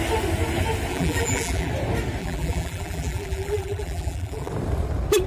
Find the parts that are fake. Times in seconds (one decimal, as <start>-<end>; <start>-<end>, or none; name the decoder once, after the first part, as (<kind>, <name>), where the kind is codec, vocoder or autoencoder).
0.9-1.7 (vocoder, BigVGAN v2); 2.2-4.5